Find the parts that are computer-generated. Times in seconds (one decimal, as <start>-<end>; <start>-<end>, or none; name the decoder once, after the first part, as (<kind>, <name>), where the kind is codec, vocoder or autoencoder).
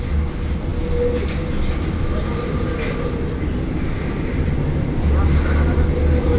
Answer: none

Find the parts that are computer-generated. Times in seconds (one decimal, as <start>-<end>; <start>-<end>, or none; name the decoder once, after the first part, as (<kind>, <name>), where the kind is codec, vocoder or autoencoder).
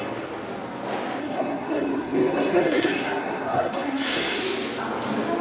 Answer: 1.2-4.4 (codec, SNAC)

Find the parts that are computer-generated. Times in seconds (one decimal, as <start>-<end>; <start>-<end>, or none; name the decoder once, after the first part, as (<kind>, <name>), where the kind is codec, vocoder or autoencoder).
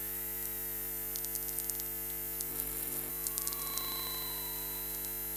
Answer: 2.5-3.1 (codec, SNAC)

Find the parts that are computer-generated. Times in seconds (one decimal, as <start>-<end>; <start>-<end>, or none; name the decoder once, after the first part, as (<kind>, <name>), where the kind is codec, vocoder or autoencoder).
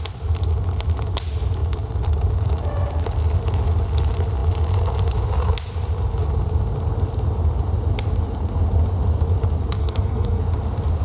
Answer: 9.8-10.4 (codec, SNAC)